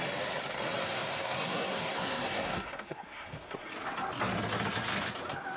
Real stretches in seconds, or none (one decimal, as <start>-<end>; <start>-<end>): 0.0-0.8; 3.7-5.6